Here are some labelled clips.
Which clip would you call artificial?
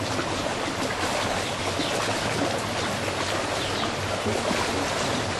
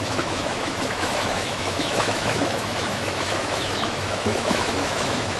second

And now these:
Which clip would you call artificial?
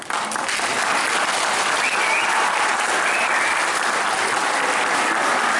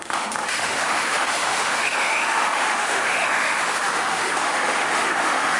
second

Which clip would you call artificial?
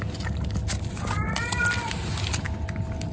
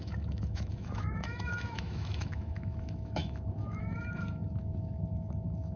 second